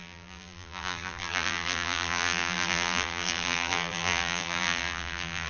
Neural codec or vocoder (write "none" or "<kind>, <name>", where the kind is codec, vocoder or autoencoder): vocoder, BigVGAN v2